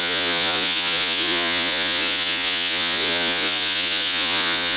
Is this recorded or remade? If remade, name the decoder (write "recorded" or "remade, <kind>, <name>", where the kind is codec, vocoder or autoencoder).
remade, vocoder, Vocos